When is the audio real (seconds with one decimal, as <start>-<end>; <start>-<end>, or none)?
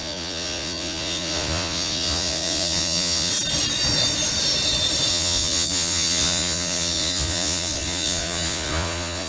3.3-5.1